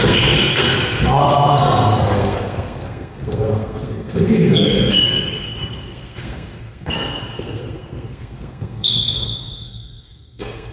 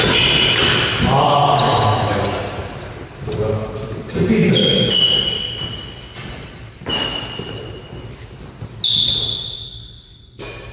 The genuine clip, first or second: second